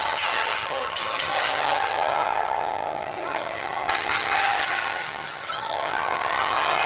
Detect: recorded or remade remade